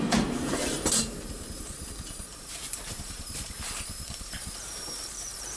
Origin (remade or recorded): remade